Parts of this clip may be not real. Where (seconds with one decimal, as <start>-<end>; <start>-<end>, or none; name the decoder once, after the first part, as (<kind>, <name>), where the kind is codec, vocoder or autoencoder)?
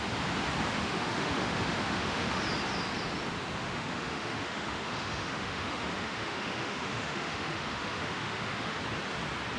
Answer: 0.7-2.4 (autoencoder, DAC-VAE); 3.6-8.8